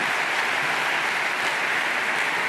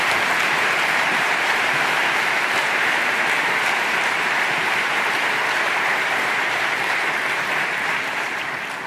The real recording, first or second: first